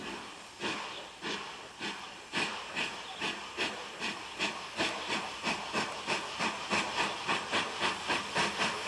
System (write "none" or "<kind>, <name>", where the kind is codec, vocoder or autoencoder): none